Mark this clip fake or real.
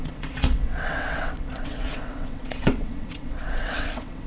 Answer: fake